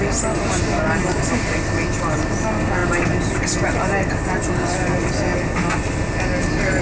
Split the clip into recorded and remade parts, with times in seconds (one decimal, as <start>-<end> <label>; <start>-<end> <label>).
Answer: 0.0-6.8 recorded